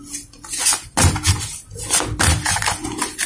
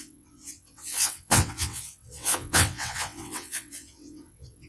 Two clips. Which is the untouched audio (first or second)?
first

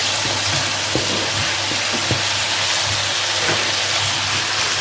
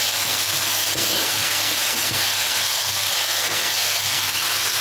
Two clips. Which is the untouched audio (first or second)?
first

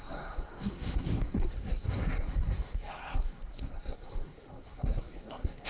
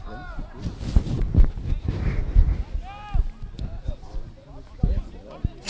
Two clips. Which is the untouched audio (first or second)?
second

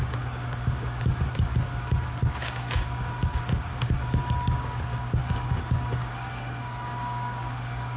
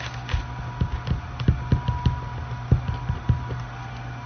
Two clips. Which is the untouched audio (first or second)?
second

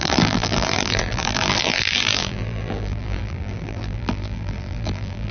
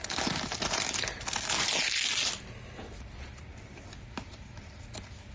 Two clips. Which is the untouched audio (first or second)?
second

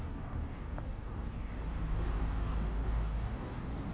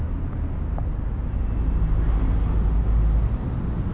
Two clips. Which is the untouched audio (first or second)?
second